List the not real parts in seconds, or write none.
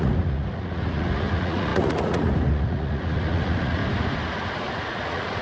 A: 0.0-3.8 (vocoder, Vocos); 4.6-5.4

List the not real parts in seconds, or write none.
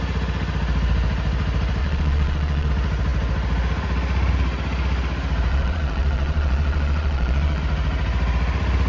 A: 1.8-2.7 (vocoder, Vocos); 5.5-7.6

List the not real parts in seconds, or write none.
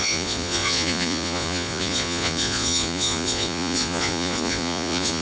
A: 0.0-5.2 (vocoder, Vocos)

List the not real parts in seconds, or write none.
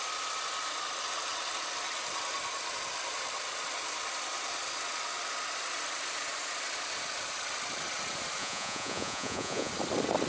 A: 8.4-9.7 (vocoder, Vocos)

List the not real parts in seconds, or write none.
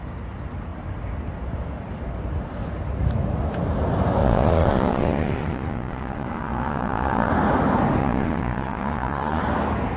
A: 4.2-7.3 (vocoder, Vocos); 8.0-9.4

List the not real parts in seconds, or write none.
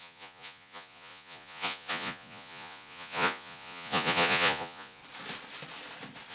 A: 0.0-5.0 (vocoder, Vocos)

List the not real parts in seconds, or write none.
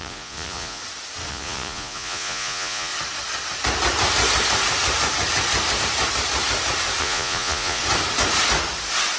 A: 0.0-0.8 (vocoder, Vocos); 1.3-2.9; 7.0-7.8